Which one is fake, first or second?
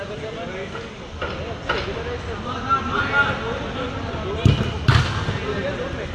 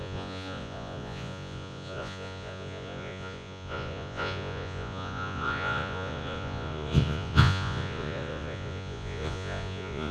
second